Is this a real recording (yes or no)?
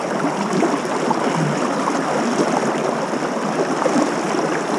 yes